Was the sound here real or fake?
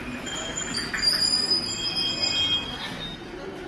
real